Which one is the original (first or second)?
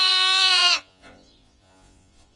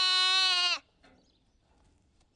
second